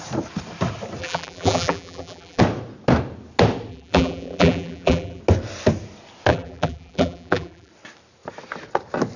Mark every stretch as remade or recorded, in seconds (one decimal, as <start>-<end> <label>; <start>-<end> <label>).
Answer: 0.0-1.0 recorded; 1.0-2.4 remade; 2.4-3.7 recorded; 3.7-5.2 remade; 5.2-6.3 recorded; 6.3-7.7 remade; 7.7-9.2 recorded